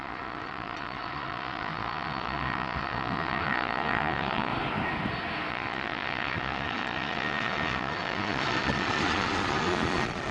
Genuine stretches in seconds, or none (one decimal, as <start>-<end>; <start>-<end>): 4.5-5.5